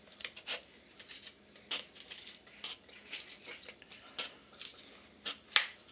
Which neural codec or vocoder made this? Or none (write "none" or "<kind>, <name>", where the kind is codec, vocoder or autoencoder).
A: none